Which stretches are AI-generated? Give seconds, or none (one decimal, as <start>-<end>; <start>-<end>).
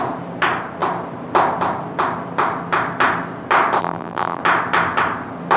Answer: 3.8-4.4